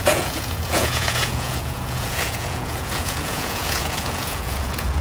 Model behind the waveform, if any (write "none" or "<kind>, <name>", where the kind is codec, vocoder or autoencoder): vocoder, Vocos